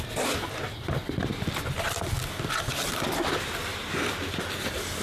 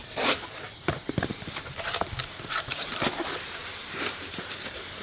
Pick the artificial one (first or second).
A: second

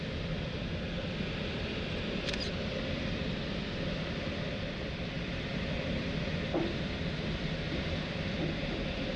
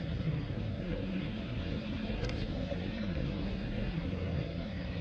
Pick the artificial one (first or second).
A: second